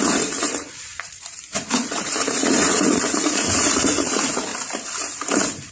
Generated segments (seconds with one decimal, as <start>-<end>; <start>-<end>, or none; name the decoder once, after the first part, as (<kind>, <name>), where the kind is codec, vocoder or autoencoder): 0.0-4.5 (vocoder, Vocos)